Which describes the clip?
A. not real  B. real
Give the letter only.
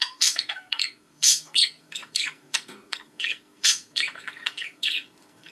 A